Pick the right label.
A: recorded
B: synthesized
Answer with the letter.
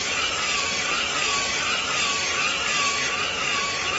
B